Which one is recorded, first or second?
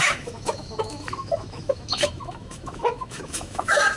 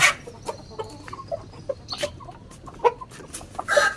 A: second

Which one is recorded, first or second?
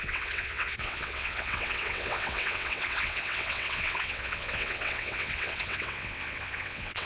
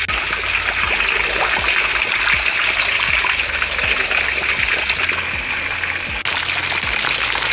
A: second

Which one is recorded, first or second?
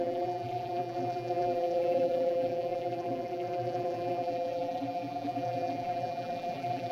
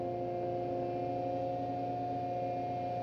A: second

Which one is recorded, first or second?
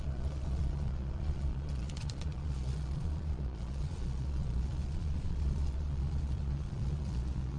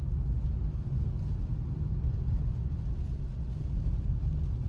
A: second